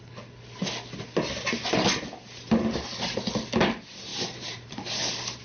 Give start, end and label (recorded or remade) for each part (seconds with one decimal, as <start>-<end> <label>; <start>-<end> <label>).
0.0-4.1 recorded; 4.1-4.9 remade; 4.9-5.4 recorded